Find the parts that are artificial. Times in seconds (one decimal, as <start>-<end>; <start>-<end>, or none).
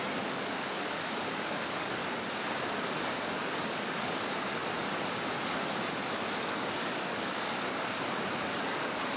0.0-2.0; 2.6-4.6; 6.4-9.2